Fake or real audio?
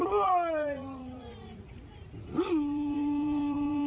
fake